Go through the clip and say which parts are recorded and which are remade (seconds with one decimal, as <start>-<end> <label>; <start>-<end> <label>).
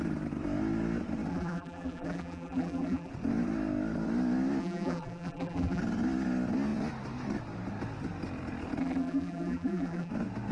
0.0-1.3 recorded; 1.3-3.1 remade; 3.1-4.6 recorded; 4.6-5.8 remade; 5.8-8.8 recorded; 8.8-10.1 remade; 10.1-10.5 recorded